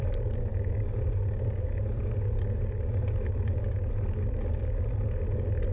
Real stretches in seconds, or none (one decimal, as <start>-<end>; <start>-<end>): 0.0-5.7